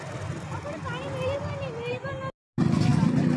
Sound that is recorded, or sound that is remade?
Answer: recorded